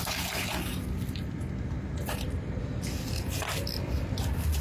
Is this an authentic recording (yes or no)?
yes